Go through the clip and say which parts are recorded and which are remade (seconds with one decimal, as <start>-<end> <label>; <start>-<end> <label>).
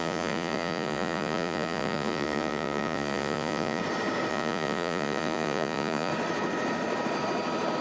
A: 0.0-3.8 remade; 3.8-4.3 recorded; 4.3-6.1 remade; 6.1-7.8 recorded